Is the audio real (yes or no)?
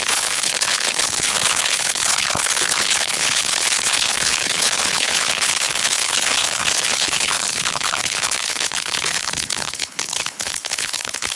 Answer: no